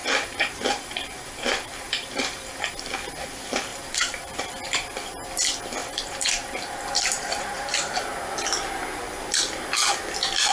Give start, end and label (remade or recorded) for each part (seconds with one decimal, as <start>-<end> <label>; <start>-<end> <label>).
0.0-2.7 remade; 2.7-3.7 recorded; 3.7-4.5 remade; 4.5-5.8 recorded; 5.8-8.0 remade; 8.0-10.5 recorded